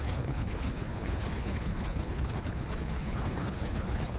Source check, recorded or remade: remade